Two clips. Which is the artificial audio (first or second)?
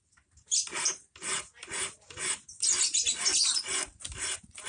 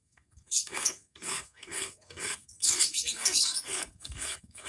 second